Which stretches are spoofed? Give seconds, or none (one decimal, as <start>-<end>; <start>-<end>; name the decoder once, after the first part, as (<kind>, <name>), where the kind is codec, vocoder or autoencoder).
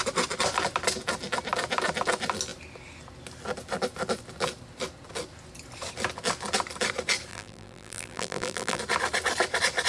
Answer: 7.3-8.8 (vocoder, BigVGAN v2)